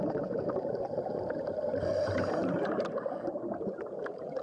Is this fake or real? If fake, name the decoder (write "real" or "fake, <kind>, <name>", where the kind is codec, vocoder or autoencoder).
fake, vocoder, BigVGAN v2